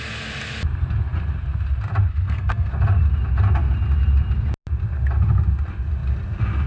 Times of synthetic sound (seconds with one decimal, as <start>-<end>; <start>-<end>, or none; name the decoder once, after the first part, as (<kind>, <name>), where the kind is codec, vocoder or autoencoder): 2.1-2.7 (codec, SNAC)